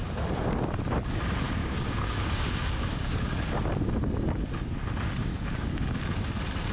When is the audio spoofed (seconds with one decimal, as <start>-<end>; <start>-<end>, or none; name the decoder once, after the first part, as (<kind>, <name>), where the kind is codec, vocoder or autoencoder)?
1.6-3.6 (codec, DAC); 5.3-6.0